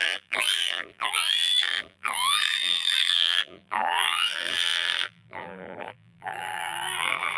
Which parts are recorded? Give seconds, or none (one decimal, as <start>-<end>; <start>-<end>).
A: none

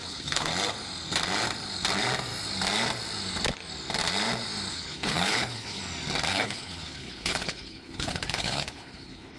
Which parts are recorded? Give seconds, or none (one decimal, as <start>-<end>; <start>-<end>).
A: 0.5-4.7; 5.8-6.3

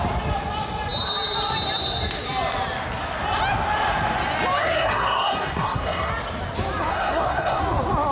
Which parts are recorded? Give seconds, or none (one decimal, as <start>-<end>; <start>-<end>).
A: 0.0-4.6; 6.1-6.9; 7.6-8.1

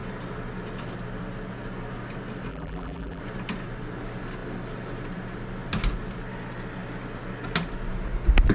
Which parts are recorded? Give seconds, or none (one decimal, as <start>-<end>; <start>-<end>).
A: 0.0-2.5; 3.2-8.5

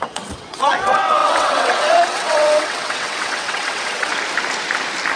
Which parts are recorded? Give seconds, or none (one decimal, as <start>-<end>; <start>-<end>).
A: 4.1-5.2

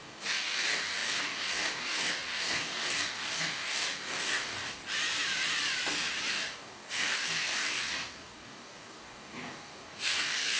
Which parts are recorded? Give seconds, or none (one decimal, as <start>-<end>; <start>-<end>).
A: 4.8-6.3

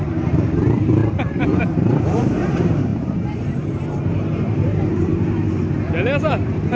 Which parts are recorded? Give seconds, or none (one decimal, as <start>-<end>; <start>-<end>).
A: 5.1-6.2

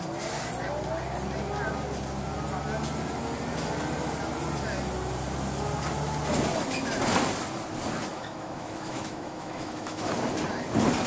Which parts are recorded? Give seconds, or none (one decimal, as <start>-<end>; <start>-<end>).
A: 0.0-8.1; 10.1-11.1